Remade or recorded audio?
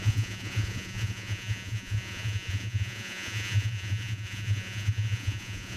remade